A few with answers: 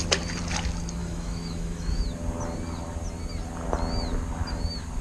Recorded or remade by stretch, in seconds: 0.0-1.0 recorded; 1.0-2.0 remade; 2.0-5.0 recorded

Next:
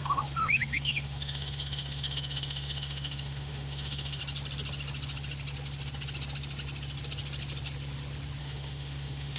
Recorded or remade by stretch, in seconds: 0.0-4.2 remade; 4.2-8.4 recorded; 8.4-9.4 remade

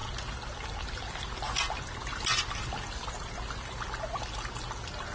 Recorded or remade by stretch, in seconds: 0.0-5.1 recorded